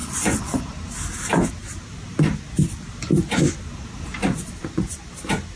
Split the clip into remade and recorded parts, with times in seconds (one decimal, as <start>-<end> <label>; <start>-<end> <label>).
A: 0.0-0.6 remade; 0.6-4.6 recorded; 4.6-5.1 remade; 5.1-5.6 recorded